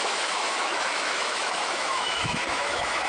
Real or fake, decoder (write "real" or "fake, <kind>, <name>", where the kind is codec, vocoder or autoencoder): fake, autoencoder, DAC-VAE